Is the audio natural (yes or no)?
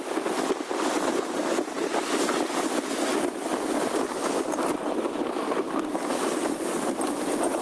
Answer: yes